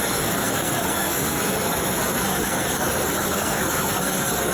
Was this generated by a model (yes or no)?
yes